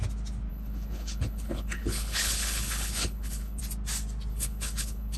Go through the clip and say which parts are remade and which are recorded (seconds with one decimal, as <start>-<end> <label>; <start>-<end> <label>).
0.0-0.5 recorded; 0.5-3.6 remade; 3.6-4.3 recorded; 4.3-5.2 remade